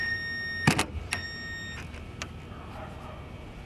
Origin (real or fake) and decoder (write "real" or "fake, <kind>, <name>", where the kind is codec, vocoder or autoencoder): real